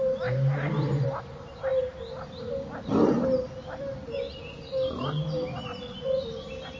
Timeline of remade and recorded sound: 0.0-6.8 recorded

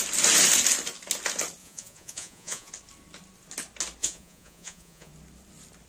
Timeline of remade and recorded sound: 0.0-1.6 recorded; 1.6-2.7 remade; 2.7-4.0 recorded; 4.0-5.1 remade; 5.1-5.9 recorded

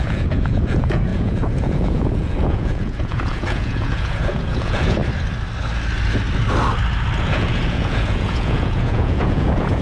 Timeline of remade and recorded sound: 0.0-5.0 remade; 5.0-7.2 recorded; 7.2-9.8 remade

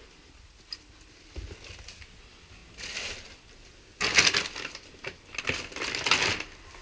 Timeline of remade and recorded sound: 0.0-6.8 recorded

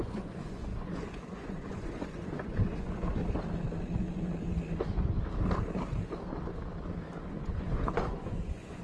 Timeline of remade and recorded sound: 0.0-3.2 remade; 3.2-7.3 recorded; 7.3-8.8 remade